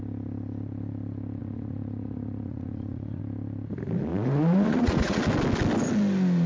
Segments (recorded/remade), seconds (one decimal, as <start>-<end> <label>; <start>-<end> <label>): 0.0-1.4 recorded; 1.4-3.2 remade; 3.2-4.1 recorded; 4.1-5.2 remade; 5.2-6.5 recorded